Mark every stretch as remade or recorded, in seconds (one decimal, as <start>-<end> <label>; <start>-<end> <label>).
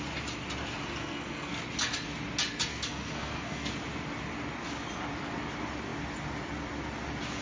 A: 0.0-1.0 recorded; 1.0-1.6 remade; 1.6-2.7 recorded; 2.7-3.7 remade; 3.7-7.4 recorded